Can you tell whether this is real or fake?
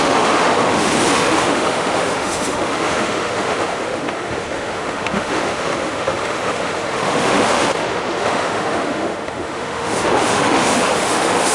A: fake